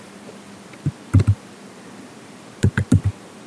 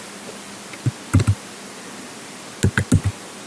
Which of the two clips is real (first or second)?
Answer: second